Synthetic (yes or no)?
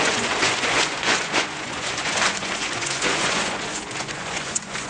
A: yes